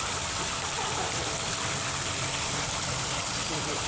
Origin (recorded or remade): recorded